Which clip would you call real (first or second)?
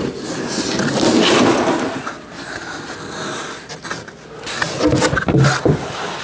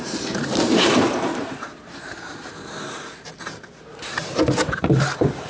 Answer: first